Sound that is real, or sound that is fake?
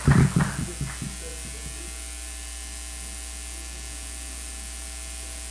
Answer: real